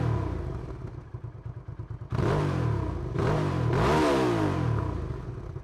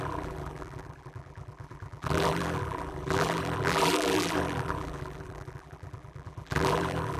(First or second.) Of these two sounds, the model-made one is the second